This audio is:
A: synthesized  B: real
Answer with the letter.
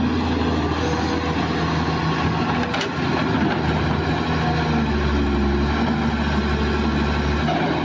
B